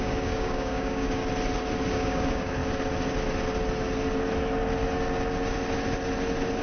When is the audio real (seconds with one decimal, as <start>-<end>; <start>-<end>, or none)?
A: 1.2-1.9; 2.6-6.6